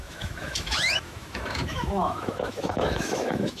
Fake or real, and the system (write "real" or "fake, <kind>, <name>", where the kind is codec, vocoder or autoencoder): fake, autoencoder, DAC-VAE